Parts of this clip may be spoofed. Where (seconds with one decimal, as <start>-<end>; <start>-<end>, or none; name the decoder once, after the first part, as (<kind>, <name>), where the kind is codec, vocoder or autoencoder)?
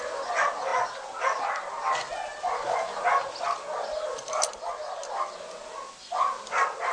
none